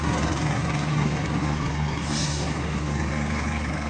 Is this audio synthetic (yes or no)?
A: yes